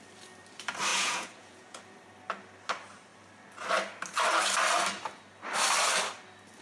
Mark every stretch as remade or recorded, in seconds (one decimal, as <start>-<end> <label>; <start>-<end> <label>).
0.0-0.9 recorded; 0.9-1.8 remade; 1.8-6.6 recorded